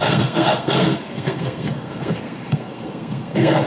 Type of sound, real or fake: fake